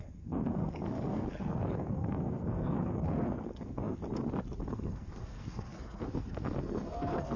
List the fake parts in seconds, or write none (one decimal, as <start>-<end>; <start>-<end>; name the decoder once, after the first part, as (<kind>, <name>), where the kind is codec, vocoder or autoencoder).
0.0-4.0 (codec, SNAC); 4.7-7.4